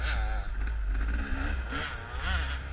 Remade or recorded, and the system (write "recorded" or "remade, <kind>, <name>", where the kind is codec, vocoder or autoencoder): recorded